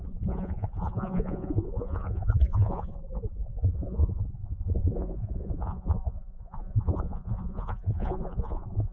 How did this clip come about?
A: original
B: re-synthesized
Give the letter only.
B